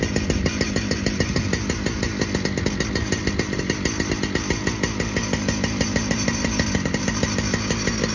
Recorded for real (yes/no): yes